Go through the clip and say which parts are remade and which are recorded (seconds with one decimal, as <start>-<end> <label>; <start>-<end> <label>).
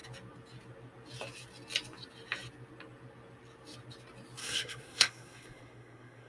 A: 0.0-4.4 recorded; 4.4-6.3 remade